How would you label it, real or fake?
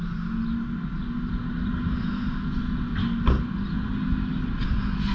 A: real